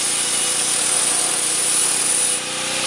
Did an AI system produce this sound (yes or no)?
no